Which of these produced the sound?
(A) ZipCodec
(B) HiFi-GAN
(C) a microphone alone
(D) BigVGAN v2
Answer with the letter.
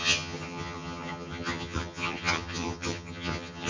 B